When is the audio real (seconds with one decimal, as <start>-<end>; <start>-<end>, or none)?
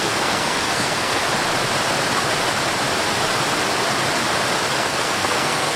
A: 1.2-4.7